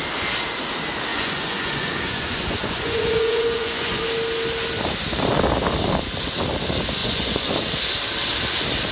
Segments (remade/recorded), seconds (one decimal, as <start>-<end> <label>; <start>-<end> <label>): 0.0-1.1 recorded; 1.1-4.0 remade; 4.0-7.0 recorded; 7.0-7.5 remade; 7.5-8.9 recorded